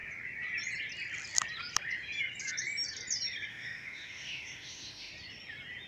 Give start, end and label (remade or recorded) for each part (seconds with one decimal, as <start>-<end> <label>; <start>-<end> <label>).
0.0-3.5 recorded; 3.5-5.1 remade; 5.1-5.9 recorded